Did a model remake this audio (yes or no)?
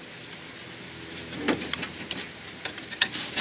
no